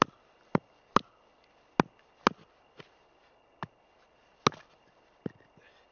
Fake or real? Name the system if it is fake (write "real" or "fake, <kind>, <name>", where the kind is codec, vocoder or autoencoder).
real